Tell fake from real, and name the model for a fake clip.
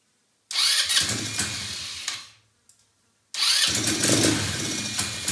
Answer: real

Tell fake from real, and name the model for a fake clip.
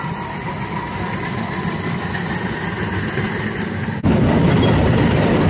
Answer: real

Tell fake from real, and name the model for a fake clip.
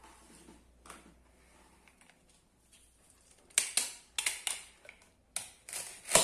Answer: real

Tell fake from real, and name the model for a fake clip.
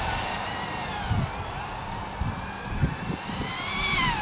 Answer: real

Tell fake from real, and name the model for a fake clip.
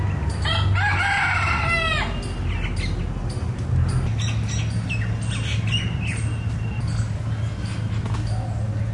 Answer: real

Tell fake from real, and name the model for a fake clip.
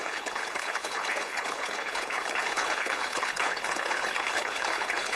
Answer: fake, codec, HILCodec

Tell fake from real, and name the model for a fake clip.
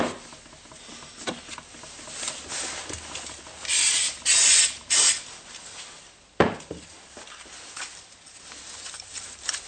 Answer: real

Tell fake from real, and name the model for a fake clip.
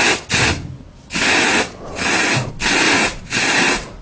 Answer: real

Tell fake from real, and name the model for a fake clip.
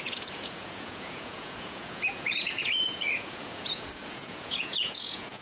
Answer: fake, vocoder, Vocos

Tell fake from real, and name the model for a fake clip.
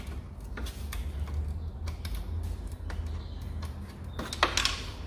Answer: real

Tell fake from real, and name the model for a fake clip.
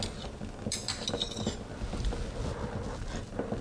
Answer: real